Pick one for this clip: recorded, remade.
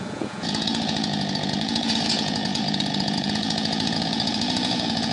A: remade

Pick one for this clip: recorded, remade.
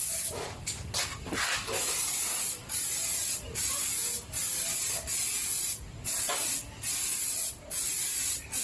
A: recorded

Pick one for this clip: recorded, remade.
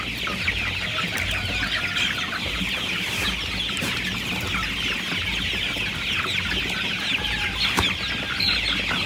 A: recorded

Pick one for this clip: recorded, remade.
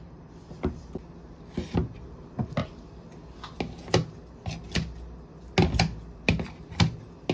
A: recorded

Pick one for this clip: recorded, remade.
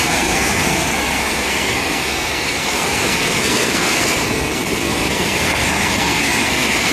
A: remade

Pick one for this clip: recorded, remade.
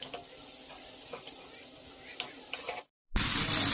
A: recorded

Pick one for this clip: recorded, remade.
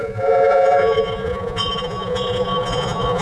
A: remade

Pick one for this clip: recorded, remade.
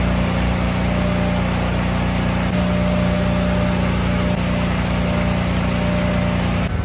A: recorded